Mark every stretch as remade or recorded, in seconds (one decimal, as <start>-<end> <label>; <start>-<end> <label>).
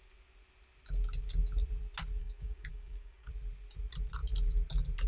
0.0-2.2 recorded; 2.2-3.3 remade; 3.3-5.1 recorded